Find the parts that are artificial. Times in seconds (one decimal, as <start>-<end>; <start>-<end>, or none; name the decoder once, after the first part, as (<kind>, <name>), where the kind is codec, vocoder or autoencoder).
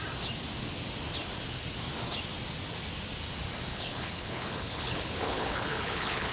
3.7-6.3 (codec, HILCodec)